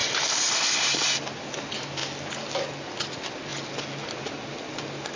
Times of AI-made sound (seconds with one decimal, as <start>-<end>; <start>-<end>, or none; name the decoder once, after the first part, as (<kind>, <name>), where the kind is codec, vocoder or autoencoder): 0.0-1.0 (vocoder, BigVGAN v2)